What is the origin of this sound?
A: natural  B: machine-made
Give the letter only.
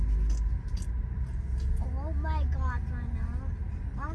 A